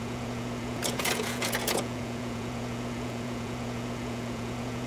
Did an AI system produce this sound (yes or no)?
yes